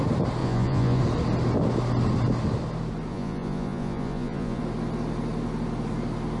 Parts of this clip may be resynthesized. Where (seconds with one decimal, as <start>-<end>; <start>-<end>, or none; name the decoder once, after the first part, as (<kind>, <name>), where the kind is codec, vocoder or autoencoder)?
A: 0.4-1.0 (vocoder, Vocos); 3.1-4.6